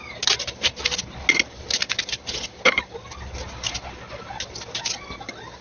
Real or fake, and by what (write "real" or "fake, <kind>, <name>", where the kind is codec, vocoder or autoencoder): real